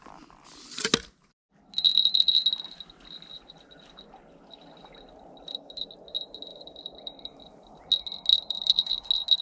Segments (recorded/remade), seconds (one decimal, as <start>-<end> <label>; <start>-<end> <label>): 0.0-6.5 recorded; 6.5-7.7 remade; 7.7-8.3 recorded; 8.3-8.9 remade; 8.9-9.4 recorded